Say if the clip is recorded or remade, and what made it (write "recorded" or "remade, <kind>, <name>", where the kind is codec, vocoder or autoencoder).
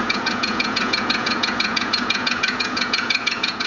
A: remade, vocoder, Vocos